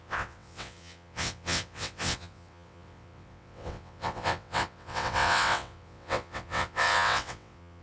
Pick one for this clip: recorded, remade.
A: remade